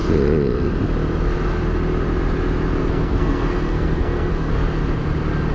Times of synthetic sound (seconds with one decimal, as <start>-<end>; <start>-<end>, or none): 2.8-4.5